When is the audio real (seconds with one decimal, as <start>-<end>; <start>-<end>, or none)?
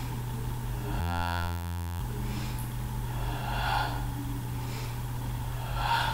0.0-1.0; 2.0-6.1